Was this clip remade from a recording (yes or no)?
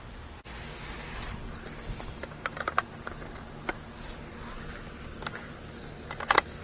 no